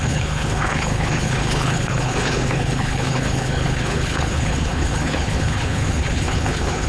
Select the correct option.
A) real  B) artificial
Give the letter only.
B